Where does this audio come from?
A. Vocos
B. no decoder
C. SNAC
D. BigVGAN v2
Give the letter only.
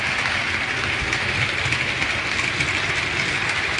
B